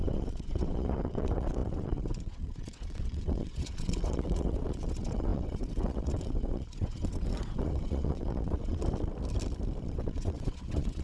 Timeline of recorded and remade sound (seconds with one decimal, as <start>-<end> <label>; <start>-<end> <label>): 0.0-8.8 remade; 8.8-9.8 recorded; 9.8-11.0 remade